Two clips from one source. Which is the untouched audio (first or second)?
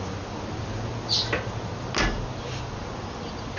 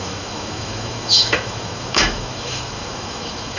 first